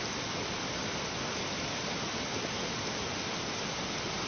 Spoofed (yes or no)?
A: no